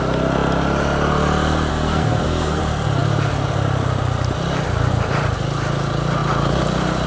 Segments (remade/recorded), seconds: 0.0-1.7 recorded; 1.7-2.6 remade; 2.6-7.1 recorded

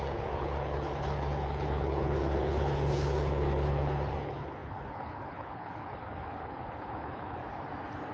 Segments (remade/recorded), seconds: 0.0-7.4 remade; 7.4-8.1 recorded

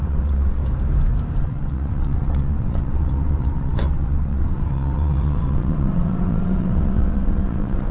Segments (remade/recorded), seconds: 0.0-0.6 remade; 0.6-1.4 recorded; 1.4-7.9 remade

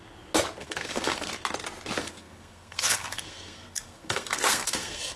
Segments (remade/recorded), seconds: 0.0-0.6 recorded; 0.6-1.3 remade; 1.3-2.0 recorded; 2.0-5.2 remade

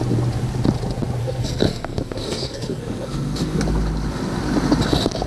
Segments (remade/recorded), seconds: 0.0-1.2 recorded; 1.2-3.6 remade; 3.6-5.3 recorded

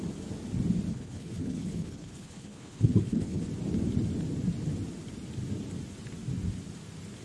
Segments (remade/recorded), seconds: 0.0-0.9 recorded; 0.9-3.5 remade; 3.5-7.2 recorded